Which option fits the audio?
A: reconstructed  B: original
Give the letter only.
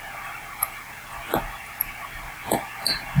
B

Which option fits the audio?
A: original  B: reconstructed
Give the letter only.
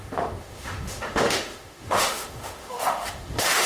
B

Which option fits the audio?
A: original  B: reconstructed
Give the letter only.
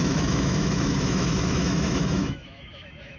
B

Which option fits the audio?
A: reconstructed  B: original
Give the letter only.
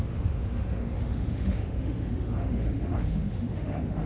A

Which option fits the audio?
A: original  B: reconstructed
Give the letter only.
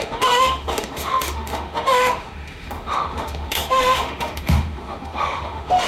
B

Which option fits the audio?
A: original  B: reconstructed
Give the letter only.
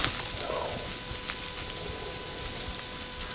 A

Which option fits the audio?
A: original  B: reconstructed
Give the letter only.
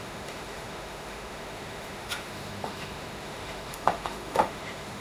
B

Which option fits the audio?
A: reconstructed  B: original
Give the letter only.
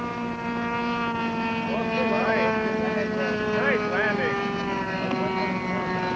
B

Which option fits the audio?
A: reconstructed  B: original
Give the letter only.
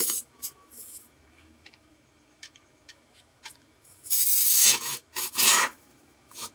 A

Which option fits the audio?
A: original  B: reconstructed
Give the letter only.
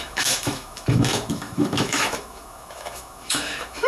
B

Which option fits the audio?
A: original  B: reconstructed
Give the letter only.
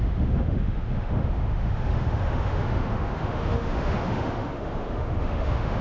B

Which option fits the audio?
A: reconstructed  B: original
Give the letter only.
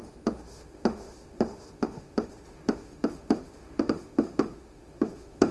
A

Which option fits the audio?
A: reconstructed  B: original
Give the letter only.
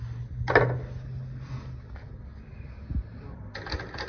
B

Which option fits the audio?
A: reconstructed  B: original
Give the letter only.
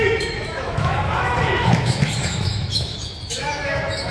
A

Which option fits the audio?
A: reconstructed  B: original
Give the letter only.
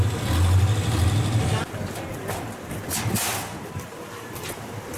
B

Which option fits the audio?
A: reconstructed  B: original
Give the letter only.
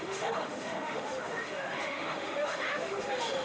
A